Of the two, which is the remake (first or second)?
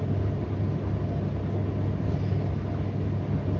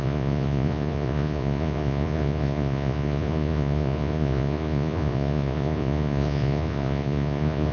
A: second